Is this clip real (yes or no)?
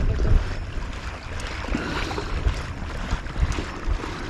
yes